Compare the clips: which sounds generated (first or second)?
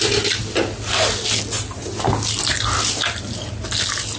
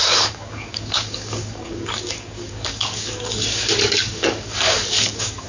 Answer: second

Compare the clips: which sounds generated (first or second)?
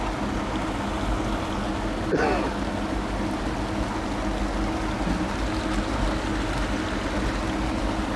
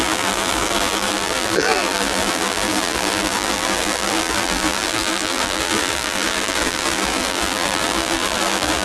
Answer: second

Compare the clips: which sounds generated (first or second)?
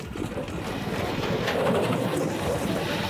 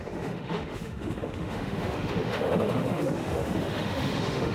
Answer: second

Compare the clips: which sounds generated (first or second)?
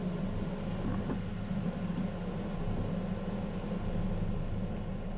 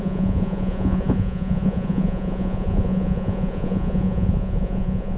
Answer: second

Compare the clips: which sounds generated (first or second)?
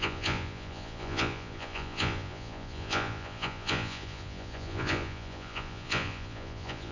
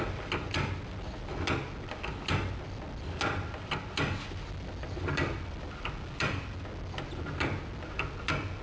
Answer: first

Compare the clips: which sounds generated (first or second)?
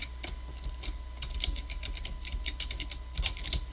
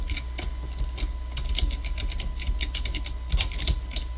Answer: first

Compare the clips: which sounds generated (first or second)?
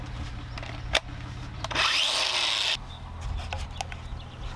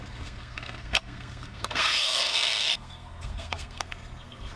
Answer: second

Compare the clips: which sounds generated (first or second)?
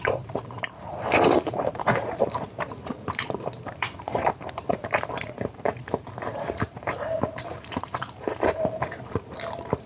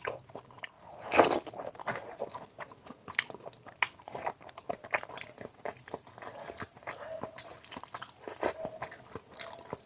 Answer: first